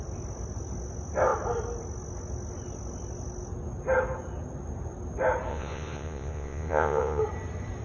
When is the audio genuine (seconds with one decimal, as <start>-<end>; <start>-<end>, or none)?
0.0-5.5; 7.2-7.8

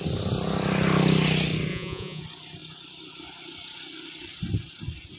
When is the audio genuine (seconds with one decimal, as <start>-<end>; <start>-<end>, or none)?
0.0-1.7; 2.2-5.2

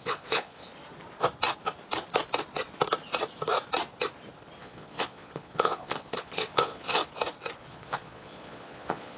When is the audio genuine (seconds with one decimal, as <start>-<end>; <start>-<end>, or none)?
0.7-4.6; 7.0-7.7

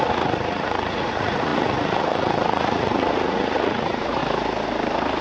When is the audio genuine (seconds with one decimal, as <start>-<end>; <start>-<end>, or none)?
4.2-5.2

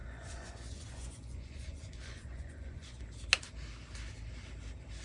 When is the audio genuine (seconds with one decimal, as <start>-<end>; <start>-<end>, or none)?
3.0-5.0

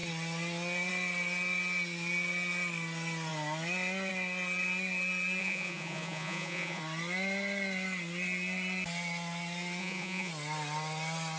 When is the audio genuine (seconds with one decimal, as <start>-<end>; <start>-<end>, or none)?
0.0-5.4; 6.8-9.8; 10.3-11.4

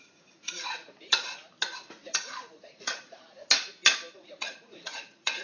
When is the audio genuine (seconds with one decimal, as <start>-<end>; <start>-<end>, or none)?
1.4-2.1; 3.4-4.1